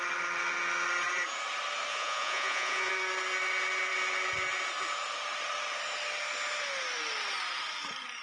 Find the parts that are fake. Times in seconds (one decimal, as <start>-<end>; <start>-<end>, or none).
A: 1.9-2.9

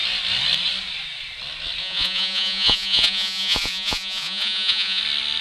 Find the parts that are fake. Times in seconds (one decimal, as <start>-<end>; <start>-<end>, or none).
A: 1.8-5.0

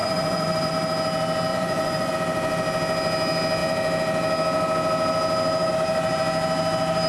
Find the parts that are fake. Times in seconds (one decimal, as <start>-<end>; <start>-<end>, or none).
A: 0.0-0.7; 1.5-2.1

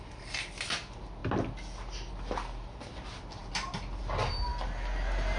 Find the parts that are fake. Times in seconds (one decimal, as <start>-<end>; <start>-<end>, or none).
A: none

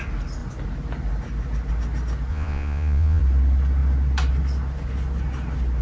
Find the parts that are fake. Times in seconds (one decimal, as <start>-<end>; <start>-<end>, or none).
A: 2.3-3.2